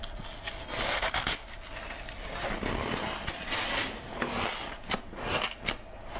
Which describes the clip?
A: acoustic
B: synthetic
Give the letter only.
A